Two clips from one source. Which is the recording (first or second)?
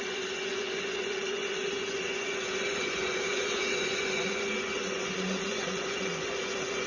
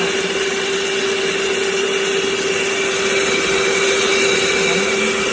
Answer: second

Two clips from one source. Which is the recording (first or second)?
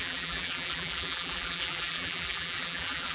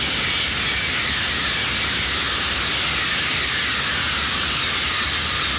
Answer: second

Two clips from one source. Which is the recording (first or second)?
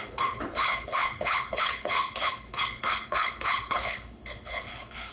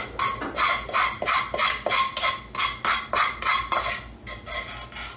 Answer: second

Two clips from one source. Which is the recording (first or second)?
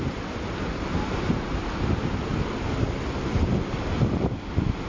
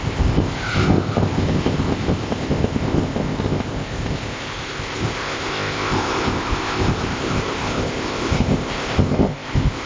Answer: first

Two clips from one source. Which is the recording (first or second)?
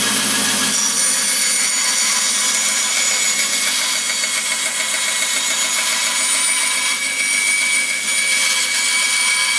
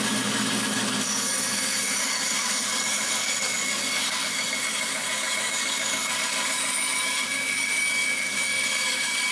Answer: first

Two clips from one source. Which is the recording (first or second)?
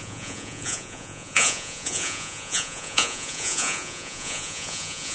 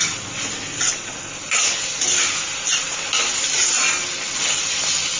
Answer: second